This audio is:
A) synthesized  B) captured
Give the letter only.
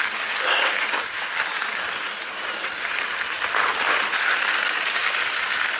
A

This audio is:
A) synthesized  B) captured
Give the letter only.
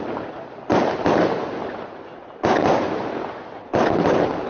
B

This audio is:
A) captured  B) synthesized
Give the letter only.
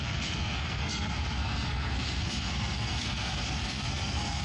B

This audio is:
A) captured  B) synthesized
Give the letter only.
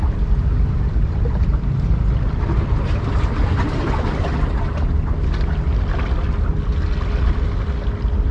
A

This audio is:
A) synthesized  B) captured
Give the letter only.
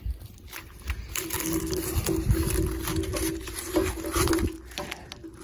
B